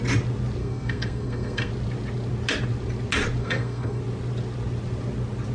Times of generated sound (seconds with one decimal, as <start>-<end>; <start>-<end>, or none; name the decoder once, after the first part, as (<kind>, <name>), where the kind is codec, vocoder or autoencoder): 0.6-1.7 (codec, SNAC); 3.4-4.0